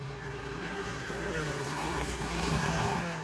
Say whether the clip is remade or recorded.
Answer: remade